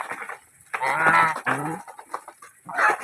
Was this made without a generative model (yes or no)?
yes